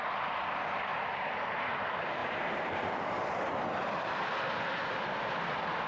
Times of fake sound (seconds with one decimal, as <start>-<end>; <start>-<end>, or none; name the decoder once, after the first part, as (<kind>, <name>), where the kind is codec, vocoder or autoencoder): 0.9-1.6 (vocoder, BigVGAN v2); 2.2-3.1